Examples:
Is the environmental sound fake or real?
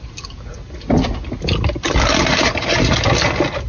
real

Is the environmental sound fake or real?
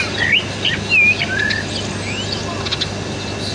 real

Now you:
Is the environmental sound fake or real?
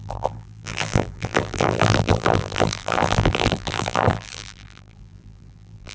fake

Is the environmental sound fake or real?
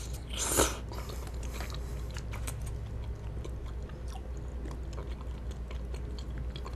real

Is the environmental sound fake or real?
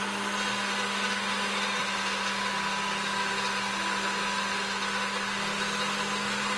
real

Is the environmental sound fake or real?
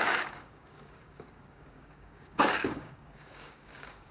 fake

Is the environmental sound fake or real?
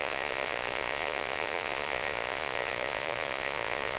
fake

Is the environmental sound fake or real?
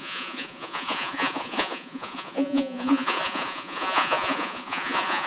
fake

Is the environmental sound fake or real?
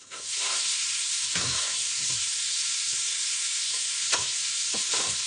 fake